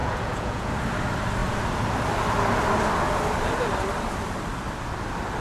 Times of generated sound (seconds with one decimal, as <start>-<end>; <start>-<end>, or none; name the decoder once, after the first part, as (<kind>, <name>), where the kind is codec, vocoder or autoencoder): 0.0-0.7 (vocoder, Vocos)